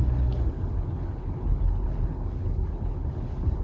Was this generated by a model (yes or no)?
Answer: yes